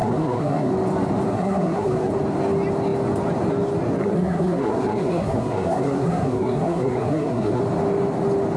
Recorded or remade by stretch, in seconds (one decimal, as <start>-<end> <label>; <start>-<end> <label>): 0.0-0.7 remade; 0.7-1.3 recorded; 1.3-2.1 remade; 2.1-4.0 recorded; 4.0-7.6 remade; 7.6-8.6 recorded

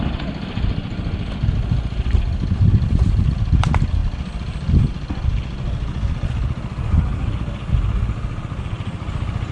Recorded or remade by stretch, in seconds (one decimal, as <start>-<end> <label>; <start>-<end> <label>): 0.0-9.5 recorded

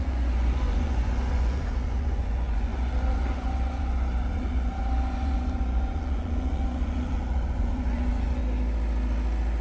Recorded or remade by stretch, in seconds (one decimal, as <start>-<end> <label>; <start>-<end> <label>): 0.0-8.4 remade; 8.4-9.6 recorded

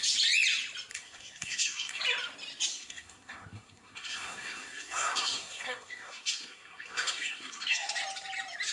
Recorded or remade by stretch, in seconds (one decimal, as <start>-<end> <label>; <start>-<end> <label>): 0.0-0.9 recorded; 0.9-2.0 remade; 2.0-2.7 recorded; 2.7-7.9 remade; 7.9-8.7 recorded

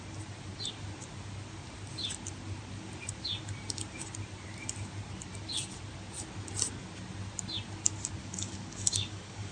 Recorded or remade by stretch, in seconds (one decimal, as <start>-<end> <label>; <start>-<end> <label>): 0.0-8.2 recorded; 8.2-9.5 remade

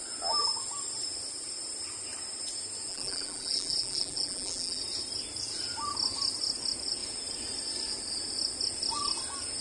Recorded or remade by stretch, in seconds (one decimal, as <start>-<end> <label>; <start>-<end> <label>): 0.0-2.9 recorded; 2.9-4.8 remade; 4.8-9.6 recorded

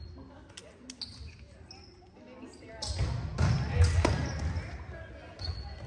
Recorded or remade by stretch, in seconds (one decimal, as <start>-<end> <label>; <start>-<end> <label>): 0.0-5.9 recorded